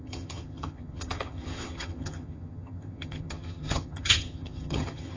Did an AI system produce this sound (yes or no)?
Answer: yes